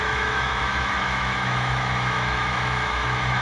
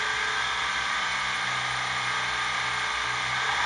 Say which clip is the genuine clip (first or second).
second